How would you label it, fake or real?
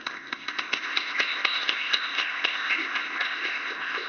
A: fake